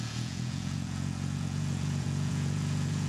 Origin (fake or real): fake